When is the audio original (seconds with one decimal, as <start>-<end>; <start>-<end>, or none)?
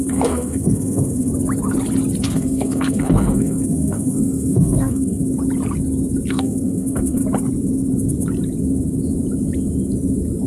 1.3-2.2; 5.2-6.3; 7.2-10.5